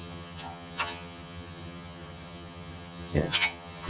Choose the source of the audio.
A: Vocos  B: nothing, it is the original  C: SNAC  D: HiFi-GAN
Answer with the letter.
D